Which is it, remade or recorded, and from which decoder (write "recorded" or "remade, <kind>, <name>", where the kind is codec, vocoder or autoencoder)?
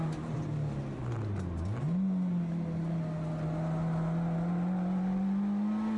recorded